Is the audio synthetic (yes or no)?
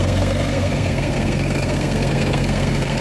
yes